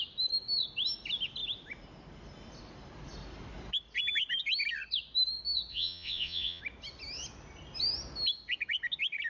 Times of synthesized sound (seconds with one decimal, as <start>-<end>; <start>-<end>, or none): 5.7-6.6